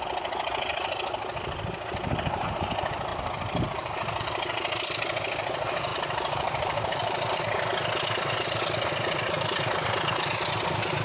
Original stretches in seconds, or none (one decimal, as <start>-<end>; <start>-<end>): 0.0-5.9; 7.6-11.0